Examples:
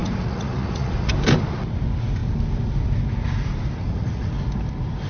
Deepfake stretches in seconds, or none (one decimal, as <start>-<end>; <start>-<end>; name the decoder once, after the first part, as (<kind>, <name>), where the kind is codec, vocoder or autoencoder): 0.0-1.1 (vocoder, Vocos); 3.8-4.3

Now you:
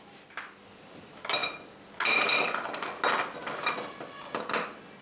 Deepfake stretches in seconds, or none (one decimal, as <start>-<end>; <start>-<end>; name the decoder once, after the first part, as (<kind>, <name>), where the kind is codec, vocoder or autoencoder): none

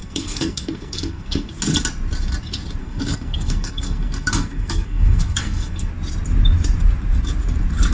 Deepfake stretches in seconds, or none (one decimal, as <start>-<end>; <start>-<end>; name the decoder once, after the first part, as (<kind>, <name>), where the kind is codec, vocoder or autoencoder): 0.0-1.5 (codec, SNAC); 2.8-5.9

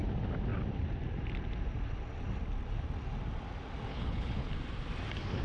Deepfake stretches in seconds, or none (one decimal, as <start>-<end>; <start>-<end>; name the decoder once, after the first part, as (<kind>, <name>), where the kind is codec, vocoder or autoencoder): 3.9-4.5 (codec, HILCodec)